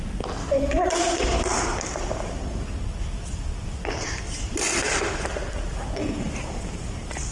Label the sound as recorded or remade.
recorded